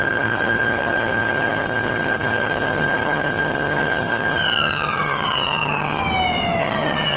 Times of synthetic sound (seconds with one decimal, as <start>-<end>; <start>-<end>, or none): 0.0-6.0; 6.6-7.2